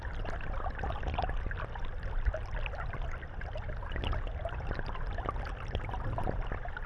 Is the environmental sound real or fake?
real